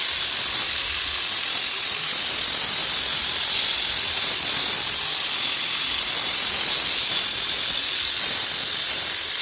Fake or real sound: real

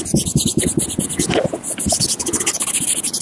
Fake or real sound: real